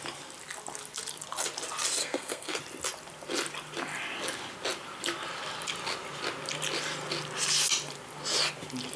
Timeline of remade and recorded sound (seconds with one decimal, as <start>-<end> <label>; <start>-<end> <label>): 0.0-2.0 recorded; 2.0-2.6 remade; 2.6-9.0 recorded